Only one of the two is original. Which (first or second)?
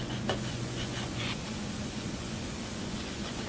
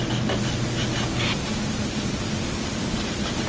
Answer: second